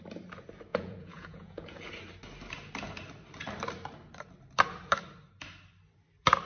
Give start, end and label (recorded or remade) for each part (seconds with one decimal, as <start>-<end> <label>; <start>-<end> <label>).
0.0-0.7 recorded; 0.7-1.9 remade; 1.9-6.5 recorded

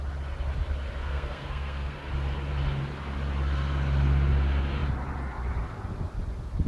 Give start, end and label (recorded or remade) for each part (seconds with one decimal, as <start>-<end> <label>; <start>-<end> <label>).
0.0-1.0 recorded; 1.0-2.1 remade; 2.1-6.7 recorded

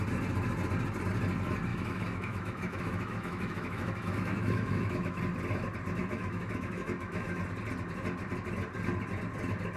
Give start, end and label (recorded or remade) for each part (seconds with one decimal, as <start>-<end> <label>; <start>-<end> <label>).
0.0-1.7 recorded; 1.7-5.2 remade; 5.2-6.0 recorded; 6.0-7.4 remade; 7.4-9.8 recorded

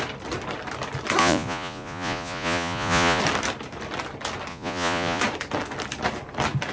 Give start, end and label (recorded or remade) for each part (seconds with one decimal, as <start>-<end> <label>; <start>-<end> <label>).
0.0-1.2 recorded; 1.2-3.2 remade; 3.2-4.5 recorded; 4.5-5.2 remade; 5.2-6.7 recorded

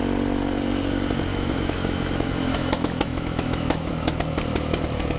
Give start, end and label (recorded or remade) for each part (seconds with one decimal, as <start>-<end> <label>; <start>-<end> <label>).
0.0-1.3 recorded; 1.3-3.9 remade; 3.9-5.2 recorded